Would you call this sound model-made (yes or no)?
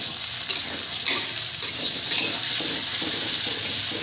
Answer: no